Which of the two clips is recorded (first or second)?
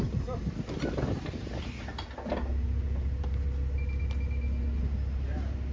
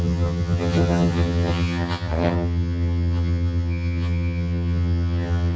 first